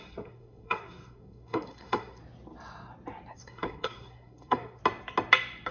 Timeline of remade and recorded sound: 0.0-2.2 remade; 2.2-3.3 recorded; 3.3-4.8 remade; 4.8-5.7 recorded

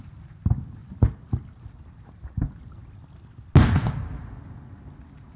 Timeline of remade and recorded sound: 0.0-5.4 recorded